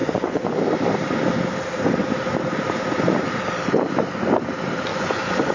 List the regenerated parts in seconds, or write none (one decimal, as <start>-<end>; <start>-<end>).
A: 0.0-0.5; 4.9-5.5

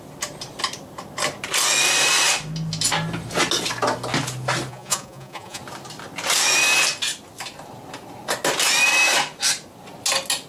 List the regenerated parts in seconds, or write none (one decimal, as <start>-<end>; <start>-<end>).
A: 4.7-5.6

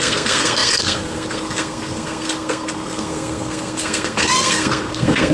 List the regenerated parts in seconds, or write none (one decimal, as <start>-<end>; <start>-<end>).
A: 0.0-5.3

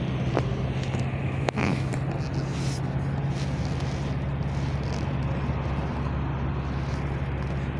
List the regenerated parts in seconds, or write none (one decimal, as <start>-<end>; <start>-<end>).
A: 1.2-1.9

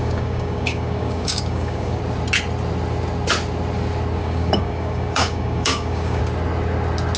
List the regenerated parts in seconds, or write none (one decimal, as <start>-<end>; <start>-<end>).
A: 0.0-2.0; 4.2-6.2